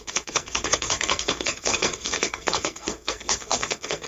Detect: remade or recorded remade